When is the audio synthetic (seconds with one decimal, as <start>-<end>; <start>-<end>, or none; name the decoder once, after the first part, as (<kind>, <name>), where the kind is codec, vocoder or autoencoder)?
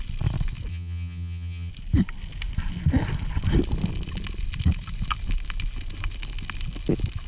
0.7-1.7 (vocoder, HiFi-GAN)